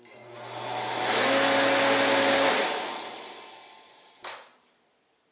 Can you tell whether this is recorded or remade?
recorded